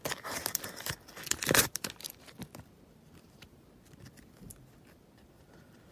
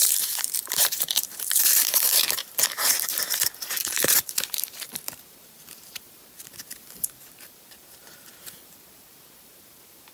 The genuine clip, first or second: first